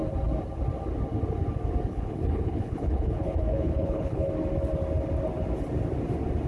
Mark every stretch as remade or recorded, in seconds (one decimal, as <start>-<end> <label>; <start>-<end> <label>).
0.0-1.9 recorded; 1.9-4.3 remade; 4.3-6.5 recorded